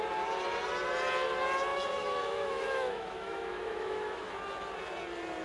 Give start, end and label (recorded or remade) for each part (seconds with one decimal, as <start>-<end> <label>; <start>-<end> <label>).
0.0-1.7 recorded; 1.7-4.3 remade; 4.3-5.4 recorded